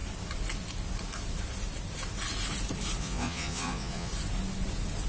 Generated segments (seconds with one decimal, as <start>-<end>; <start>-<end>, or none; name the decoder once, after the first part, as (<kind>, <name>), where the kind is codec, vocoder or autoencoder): 3.0-4.1 (vocoder, Vocos)